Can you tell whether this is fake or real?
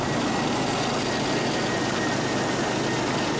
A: real